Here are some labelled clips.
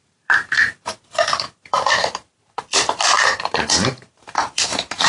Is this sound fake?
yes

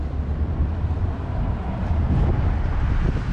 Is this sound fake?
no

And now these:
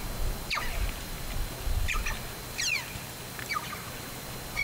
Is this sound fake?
no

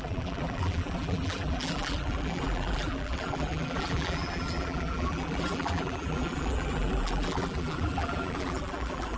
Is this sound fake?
yes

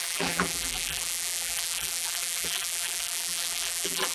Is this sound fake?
yes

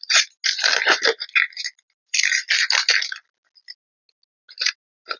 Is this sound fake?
no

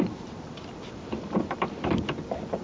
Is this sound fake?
yes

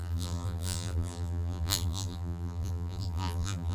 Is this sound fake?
yes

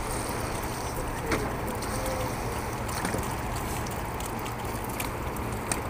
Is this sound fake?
no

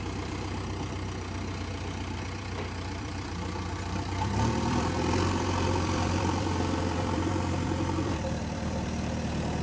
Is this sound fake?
yes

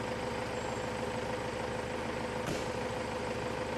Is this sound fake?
no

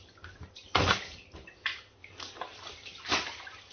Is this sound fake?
no